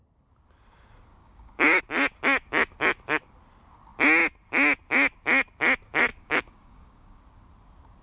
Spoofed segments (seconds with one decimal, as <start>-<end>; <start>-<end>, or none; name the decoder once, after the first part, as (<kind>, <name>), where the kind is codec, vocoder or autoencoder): 1.2-1.8 (codec, DAC); 6.1-7.2